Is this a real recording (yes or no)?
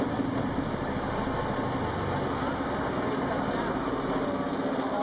yes